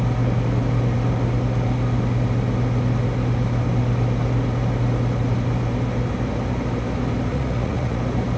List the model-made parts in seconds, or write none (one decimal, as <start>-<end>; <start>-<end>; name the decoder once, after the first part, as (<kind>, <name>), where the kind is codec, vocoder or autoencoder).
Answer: 7.3-8.0 (vocoder, Vocos)